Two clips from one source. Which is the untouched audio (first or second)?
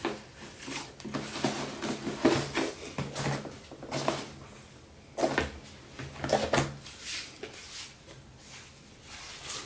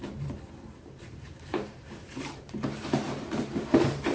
first